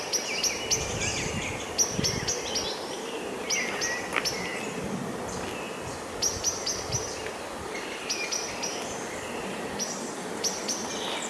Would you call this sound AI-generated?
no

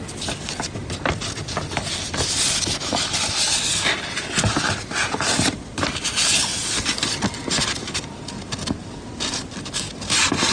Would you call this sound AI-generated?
no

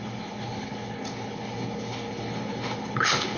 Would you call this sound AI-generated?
yes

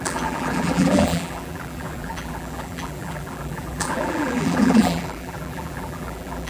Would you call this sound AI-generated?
yes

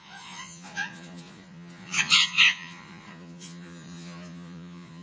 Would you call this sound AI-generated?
yes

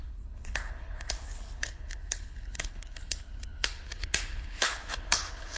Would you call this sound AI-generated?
yes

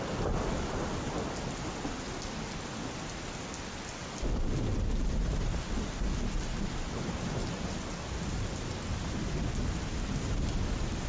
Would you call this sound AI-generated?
no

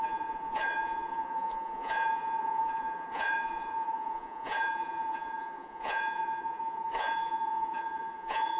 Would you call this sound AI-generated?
yes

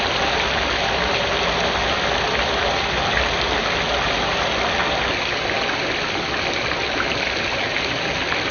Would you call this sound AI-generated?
no